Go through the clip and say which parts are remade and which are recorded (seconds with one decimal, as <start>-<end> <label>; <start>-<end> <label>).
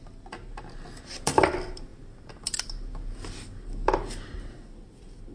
0.0-5.3 recorded